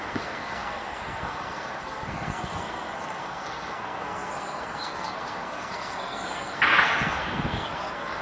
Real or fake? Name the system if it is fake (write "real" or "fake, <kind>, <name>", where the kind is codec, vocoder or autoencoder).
fake, codec, SNAC